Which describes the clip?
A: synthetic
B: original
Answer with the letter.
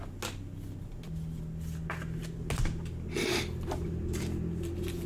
B